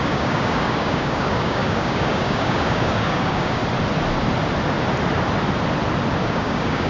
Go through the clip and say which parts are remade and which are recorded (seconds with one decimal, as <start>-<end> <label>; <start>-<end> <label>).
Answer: 0.0-3.6 remade; 3.6-6.2 recorded; 6.2-6.9 remade